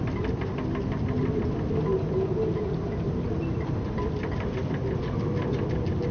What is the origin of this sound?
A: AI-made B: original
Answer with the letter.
B